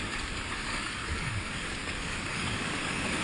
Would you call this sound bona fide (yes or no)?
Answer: no